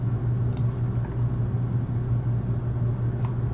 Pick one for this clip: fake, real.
real